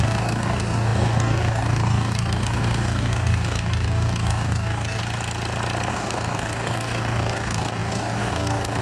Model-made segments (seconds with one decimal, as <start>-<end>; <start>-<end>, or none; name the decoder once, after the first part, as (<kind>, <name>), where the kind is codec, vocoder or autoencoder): 0.0-5.0 (codec, DAC); 5.9-8.8